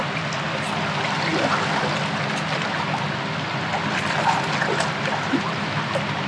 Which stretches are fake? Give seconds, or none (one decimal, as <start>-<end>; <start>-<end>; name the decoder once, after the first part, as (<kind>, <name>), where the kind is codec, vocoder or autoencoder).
none